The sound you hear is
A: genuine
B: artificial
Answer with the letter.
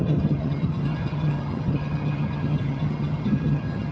B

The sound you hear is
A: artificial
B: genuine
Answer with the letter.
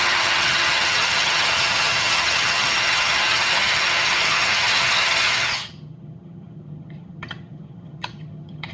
A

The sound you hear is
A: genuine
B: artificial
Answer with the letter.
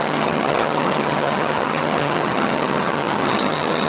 B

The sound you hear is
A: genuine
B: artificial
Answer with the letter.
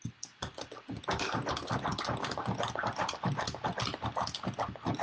A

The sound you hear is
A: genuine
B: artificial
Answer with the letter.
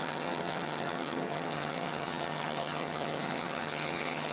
B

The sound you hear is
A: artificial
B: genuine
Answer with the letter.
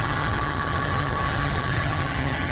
A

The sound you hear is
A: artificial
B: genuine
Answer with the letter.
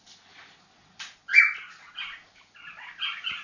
B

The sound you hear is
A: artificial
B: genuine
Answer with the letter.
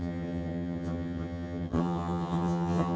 A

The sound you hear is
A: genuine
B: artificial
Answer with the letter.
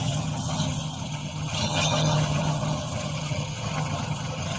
B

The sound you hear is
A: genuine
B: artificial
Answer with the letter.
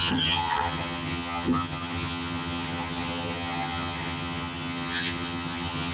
B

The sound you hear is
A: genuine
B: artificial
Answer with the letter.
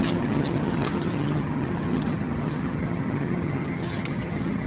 B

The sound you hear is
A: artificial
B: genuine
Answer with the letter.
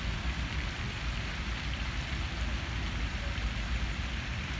B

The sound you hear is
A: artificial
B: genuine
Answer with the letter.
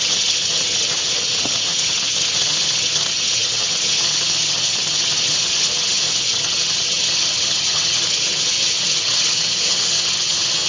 A